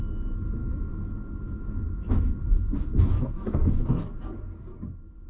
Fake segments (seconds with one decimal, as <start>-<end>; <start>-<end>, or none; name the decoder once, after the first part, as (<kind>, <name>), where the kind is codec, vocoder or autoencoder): 0.6-3.8 (autoencoder, DAC-VAE)